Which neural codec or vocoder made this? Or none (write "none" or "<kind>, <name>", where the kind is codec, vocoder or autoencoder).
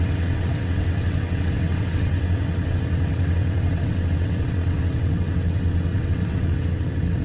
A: vocoder, WaveNeXt